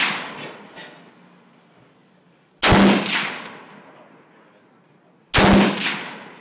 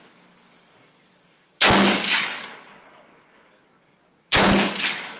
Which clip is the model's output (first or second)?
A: second